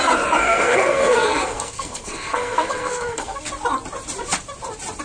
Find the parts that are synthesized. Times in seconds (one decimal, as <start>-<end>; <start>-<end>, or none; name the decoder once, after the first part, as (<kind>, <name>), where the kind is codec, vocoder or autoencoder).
0.4-3.4 (codec, SNAC)